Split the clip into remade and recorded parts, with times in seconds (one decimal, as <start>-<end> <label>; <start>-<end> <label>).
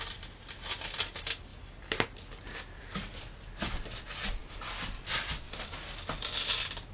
0.0-6.9 recorded